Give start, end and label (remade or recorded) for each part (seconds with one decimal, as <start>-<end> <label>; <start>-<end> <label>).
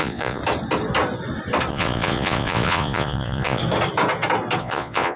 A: 0.0-0.4 remade; 0.4-1.7 recorded; 1.7-3.6 remade; 3.6-4.6 recorded; 4.6-5.2 remade